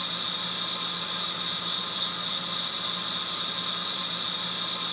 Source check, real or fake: real